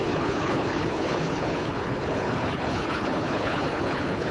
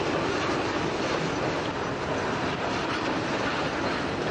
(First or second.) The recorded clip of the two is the second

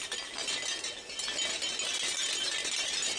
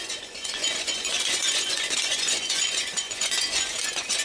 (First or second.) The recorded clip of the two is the first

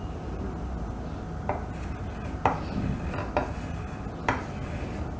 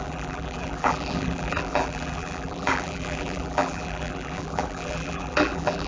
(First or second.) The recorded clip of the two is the first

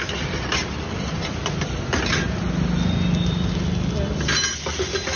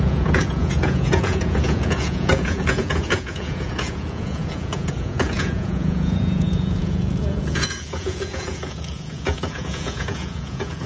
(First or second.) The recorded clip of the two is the first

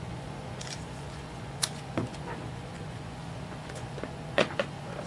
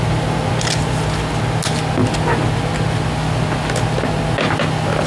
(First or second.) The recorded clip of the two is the second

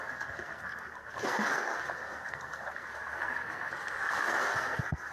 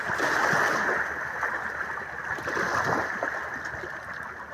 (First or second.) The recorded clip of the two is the second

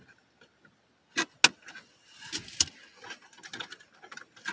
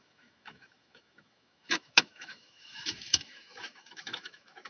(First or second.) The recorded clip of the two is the first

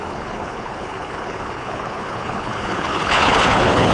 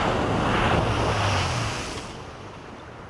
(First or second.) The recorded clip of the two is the second